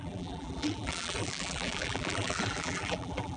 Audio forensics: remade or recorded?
remade